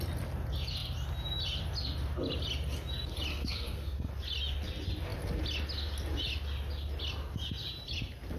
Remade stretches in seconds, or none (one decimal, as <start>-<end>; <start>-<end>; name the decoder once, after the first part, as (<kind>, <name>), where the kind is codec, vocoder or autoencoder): 3.3-4.1 (codec, SNAC)